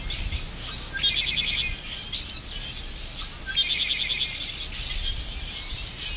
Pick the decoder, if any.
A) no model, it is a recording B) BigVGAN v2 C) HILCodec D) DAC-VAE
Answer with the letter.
A